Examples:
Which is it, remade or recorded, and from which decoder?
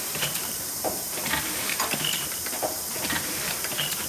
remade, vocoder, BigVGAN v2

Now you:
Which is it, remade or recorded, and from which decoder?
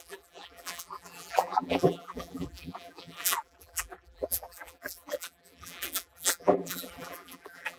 remade, vocoder, BigVGAN v2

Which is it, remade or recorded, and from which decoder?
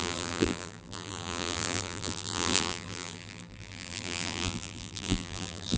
remade, vocoder, BigVGAN v2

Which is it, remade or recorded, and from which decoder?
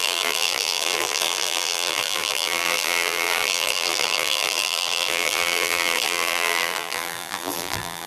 remade, vocoder, BigVGAN v2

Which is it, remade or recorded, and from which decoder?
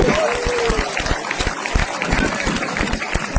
remade, vocoder, BigVGAN v2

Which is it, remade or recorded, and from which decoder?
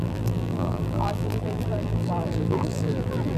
remade, vocoder, BigVGAN v2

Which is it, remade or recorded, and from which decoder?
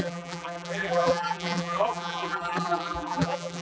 remade, vocoder, BigVGAN v2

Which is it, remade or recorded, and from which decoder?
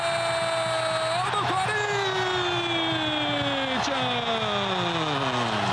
recorded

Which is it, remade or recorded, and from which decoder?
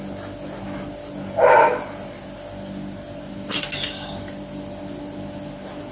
recorded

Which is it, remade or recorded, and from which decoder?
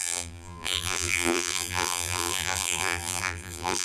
remade, vocoder, BigVGAN v2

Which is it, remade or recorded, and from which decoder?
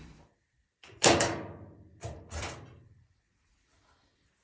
remade, vocoder, BigVGAN v2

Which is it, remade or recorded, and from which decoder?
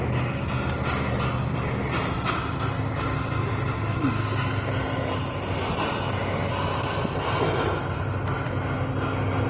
recorded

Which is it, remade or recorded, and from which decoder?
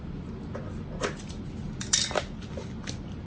recorded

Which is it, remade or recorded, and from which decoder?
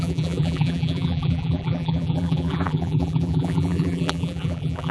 remade, vocoder, BigVGAN v2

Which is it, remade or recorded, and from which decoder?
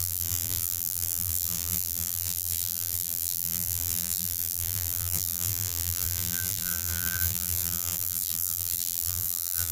remade, vocoder, BigVGAN v2